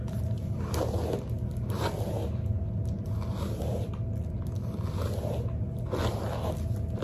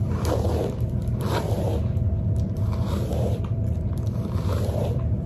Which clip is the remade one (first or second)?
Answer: second